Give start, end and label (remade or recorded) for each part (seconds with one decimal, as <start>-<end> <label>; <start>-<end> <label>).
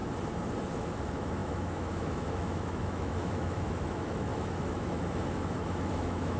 0.0-0.7 recorded; 0.7-6.4 remade